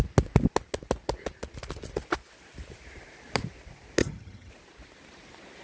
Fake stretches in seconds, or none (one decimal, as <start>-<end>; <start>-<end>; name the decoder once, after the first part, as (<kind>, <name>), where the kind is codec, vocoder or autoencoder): 4.0-4.5 (vocoder, HiFi-GAN)